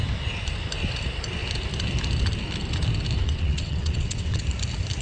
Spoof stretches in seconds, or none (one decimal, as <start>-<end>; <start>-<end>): 3.2-4.4